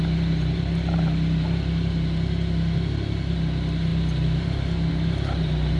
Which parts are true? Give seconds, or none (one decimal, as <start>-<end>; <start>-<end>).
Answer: 0.0-5.8